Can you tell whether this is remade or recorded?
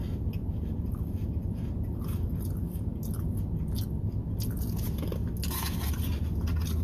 recorded